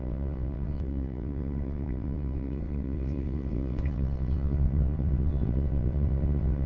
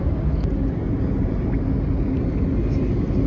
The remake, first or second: first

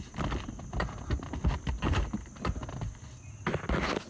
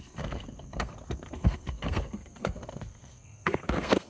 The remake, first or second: second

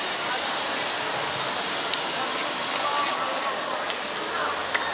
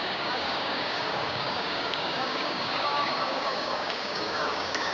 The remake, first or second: second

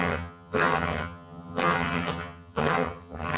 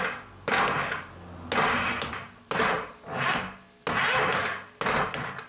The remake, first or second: first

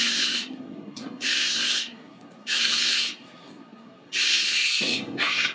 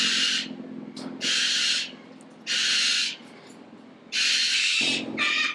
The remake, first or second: first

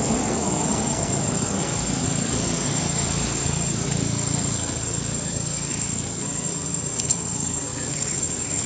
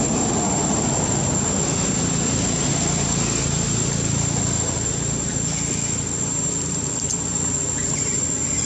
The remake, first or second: first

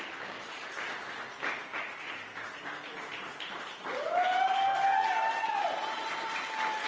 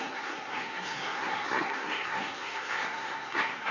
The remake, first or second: second